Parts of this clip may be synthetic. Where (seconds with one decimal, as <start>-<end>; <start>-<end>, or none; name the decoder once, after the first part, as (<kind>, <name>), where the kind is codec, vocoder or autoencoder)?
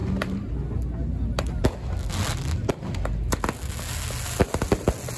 none